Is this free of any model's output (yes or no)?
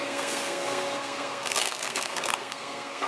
no